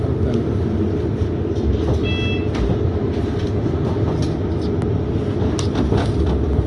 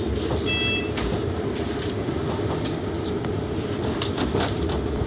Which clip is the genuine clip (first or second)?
first